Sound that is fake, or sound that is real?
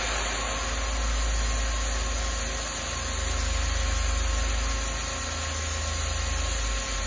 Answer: real